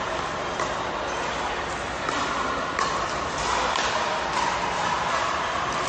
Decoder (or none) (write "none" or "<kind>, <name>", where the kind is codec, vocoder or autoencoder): none